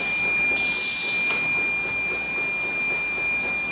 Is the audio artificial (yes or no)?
no